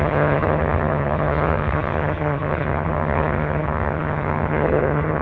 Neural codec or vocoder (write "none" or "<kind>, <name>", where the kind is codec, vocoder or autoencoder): vocoder, HiFi-GAN